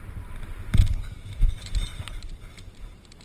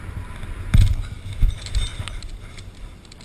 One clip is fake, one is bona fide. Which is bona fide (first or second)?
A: second